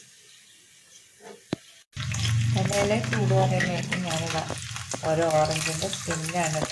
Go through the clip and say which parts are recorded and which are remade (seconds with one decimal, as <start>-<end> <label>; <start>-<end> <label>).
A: 0.0-3.2 recorded; 3.2-4.0 remade; 4.0-6.7 recorded